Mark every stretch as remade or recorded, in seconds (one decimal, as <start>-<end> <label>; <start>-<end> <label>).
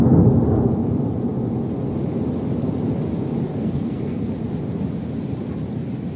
0.0-3.5 recorded; 3.5-4.3 remade; 4.3-6.2 recorded